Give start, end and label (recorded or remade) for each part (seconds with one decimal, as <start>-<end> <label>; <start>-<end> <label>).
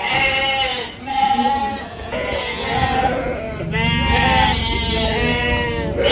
0.0-0.7 recorded; 0.7-3.6 remade; 3.6-6.1 recorded